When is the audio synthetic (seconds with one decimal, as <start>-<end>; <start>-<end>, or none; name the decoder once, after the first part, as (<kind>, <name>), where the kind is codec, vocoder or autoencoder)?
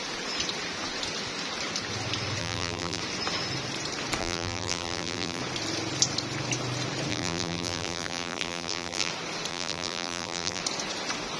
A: 2.4-3.0 (vocoder, BigVGAN v2); 4.2-5.4; 7.1-9.1; 9.5-10.6